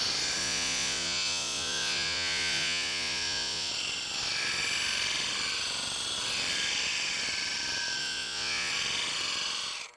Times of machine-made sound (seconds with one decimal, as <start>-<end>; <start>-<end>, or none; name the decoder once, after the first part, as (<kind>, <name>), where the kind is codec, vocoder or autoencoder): 0.4-3.7 (vocoder, Vocos); 8.0-8.7

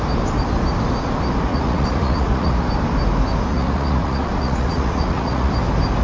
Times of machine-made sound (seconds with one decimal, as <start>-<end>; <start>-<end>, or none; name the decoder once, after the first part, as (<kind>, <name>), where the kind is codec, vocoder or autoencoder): 1.5-2.7 (vocoder, Vocos); 3.5-5.5

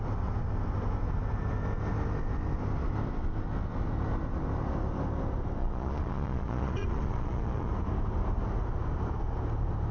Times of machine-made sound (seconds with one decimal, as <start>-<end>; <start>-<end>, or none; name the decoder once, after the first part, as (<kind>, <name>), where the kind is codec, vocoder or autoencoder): 5.6-7.7 (vocoder, Vocos)